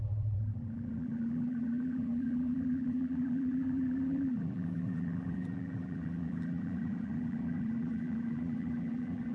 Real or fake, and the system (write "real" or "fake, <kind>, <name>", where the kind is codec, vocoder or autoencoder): fake, vocoder, BigVGAN v2